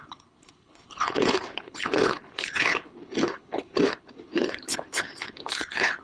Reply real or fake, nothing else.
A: fake